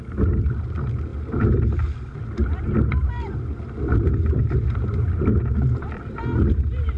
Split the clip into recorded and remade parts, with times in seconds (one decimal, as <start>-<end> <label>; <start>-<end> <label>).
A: 0.0-7.0 recorded